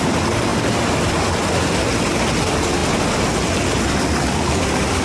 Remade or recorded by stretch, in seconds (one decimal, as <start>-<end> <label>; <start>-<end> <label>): 0.0-5.0 recorded